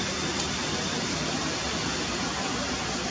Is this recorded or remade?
recorded